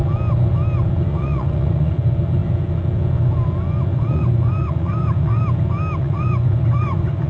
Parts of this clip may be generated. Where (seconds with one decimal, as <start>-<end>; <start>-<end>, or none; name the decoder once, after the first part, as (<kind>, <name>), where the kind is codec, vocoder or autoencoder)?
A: 1.1-1.9 (vocoder, Vocos); 3.9-5.4; 6.0-7.3